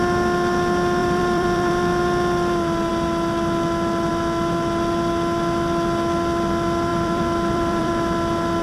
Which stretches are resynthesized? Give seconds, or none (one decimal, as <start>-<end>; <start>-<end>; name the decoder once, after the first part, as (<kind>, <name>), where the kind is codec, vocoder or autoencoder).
1.0-2.0 (vocoder, BigVGAN v2); 6.9-7.9